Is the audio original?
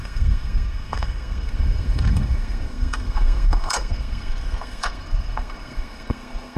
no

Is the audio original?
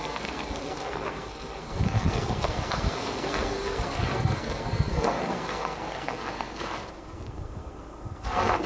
no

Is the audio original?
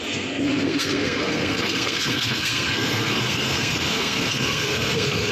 no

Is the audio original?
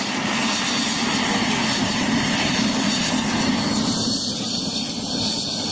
yes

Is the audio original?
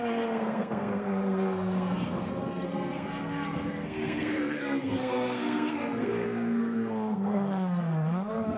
no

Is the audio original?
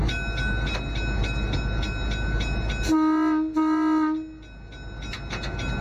yes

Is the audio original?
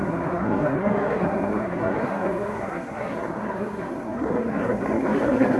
no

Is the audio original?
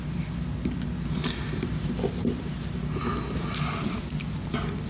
yes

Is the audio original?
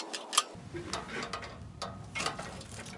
yes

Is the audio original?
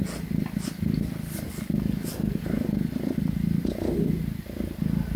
yes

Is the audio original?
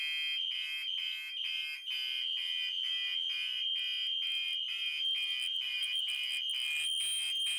yes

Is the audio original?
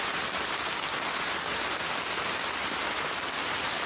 yes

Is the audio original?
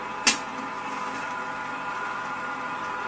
yes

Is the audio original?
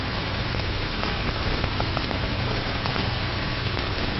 no